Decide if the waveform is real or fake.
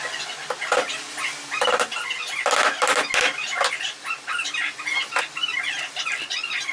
real